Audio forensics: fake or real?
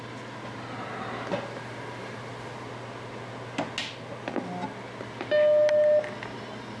real